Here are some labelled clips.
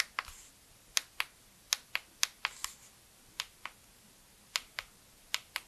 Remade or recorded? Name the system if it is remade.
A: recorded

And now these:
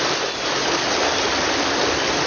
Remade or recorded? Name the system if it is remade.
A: recorded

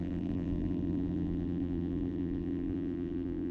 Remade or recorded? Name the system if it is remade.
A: remade, vocoder, BigVGAN v2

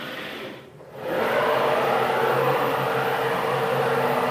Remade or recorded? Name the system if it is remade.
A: remade, vocoder, BigVGAN v2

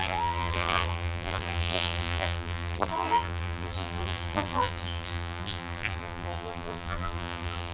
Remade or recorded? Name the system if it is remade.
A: remade, vocoder, BigVGAN v2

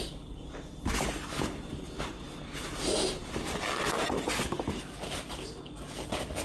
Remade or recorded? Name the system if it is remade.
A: recorded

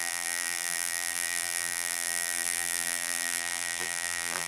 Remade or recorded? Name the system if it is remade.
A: remade, vocoder, BigVGAN v2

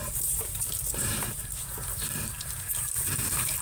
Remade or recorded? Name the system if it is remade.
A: remade, vocoder, BigVGAN v2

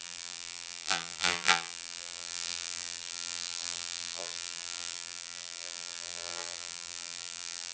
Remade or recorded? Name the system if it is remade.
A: remade, vocoder, BigVGAN v2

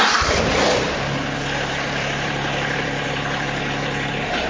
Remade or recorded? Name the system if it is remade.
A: remade, vocoder, BigVGAN v2